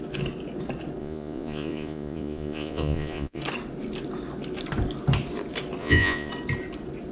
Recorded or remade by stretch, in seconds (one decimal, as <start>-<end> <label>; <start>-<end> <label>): 0.0-1.0 recorded; 1.0-3.4 remade; 3.4-5.8 recorded; 5.8-6.3 remade; 6.3-7.1 recorded